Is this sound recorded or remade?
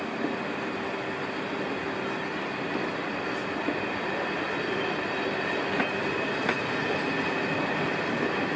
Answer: recorded